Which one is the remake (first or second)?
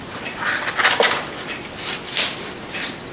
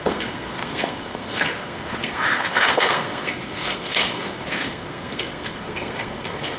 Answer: second